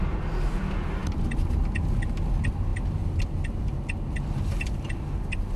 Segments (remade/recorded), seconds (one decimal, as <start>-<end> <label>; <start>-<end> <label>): 0.0-5.6 recorded